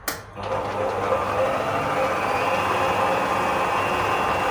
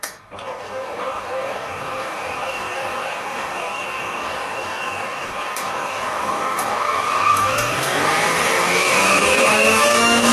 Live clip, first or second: first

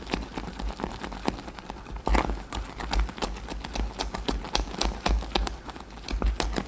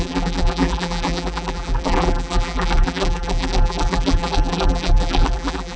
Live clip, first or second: first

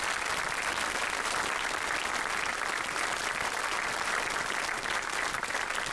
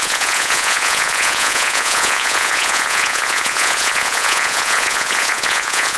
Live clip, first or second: first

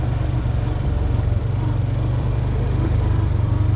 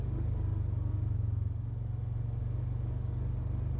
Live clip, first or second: second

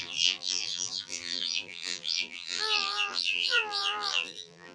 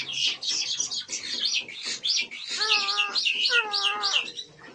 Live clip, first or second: second